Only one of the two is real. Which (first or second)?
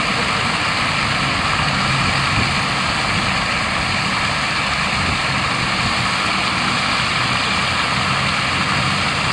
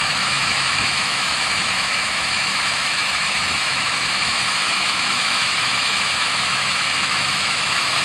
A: first